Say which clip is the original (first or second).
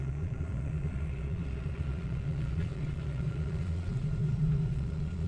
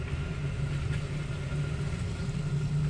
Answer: second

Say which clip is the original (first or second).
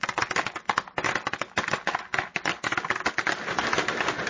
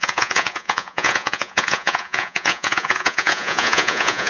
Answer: first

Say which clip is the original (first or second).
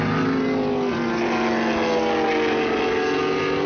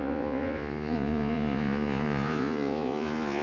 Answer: first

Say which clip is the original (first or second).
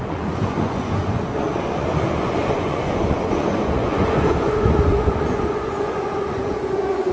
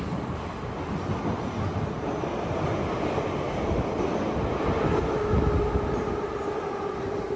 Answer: second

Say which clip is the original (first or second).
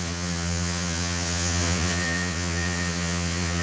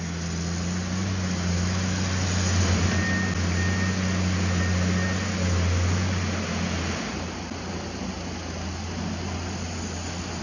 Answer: second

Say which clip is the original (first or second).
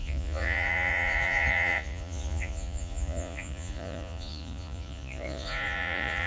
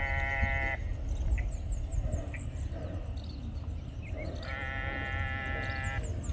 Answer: second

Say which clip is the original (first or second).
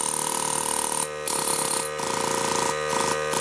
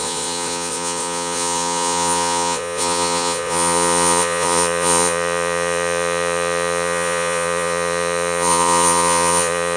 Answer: first